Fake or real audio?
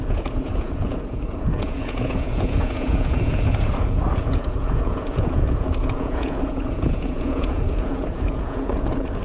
fake